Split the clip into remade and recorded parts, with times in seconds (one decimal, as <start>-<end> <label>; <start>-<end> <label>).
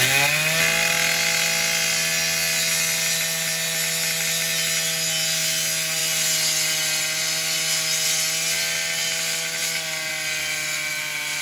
0.0-11.4 recorded